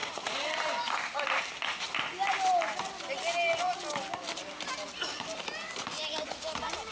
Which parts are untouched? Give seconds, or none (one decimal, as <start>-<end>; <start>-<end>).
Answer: 0.0-6.9